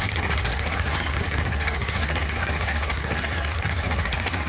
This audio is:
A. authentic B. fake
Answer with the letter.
B